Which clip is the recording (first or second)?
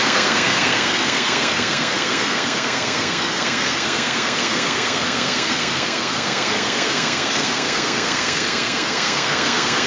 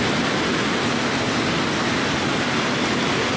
second